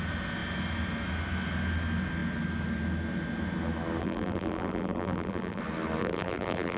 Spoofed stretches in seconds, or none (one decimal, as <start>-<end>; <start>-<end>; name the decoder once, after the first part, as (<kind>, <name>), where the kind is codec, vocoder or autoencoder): 4.0-5.6 (vocoder, BigVGAN v2); 6.0-6.8